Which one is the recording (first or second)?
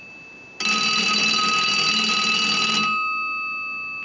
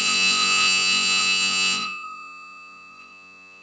first